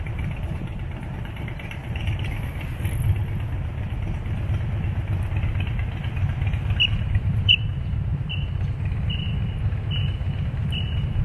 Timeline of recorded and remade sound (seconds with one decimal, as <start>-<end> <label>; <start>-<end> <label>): 0.0-1.8 remade; 1.8-7.0 recorded; 7.0-8.1 remade; 8.1-11.2 recorded